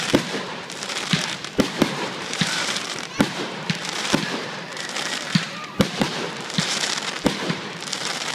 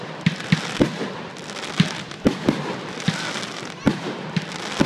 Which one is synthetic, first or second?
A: first